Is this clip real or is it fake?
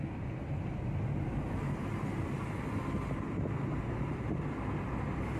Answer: real